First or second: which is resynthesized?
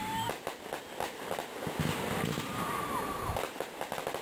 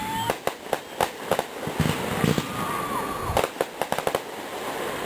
first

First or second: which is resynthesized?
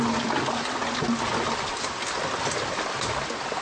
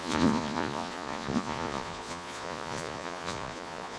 second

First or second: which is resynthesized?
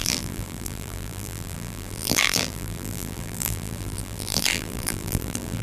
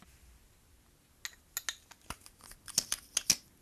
first